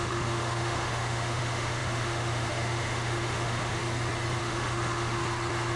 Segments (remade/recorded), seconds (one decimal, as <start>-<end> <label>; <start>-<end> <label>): 0.0-3.8 remade; 3.8-4.4 recorded; 4.4-5.2 remade; 5.2-5.8 recorded